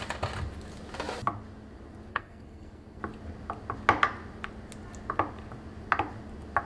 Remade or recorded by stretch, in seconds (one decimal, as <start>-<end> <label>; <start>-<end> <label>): 0.0-2.1 recorded; 2.1-3.0 remade; 3.0-6.7 recorded